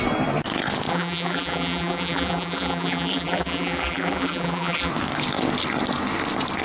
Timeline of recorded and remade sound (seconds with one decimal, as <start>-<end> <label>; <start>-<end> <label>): 0.0-0.9 recorded; 0.9-4.9 remade; 4.9-6.6 recorded

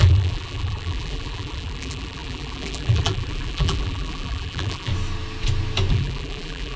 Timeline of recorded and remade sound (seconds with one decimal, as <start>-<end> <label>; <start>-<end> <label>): 0.0-4.9 remade; 4.9-5.9 recorded; 5.9-6.8 remade